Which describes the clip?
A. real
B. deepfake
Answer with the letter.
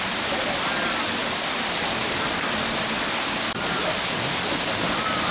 A